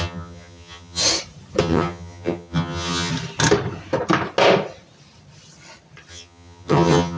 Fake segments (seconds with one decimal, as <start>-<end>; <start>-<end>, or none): 0.0-1.0; 1.6-3.1; 6.1-7.2